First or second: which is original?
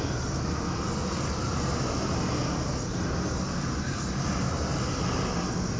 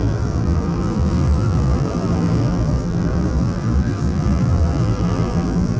first